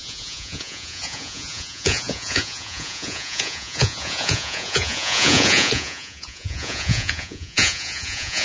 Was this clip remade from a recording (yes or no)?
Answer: yes